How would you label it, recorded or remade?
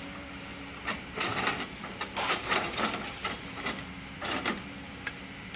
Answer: remade